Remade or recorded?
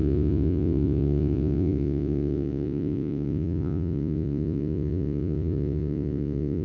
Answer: remade